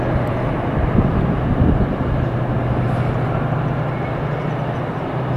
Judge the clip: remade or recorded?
recorded